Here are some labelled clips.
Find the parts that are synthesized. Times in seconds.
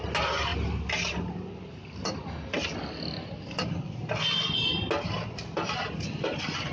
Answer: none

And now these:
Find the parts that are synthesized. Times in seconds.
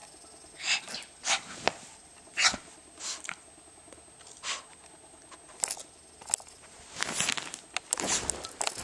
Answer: none